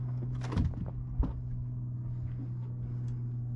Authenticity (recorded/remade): recorded